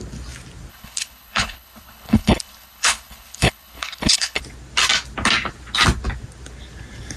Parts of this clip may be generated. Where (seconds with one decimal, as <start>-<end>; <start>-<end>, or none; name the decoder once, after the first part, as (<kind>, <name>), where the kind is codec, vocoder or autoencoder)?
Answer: 0.7-4.4 (codec, HILCodec)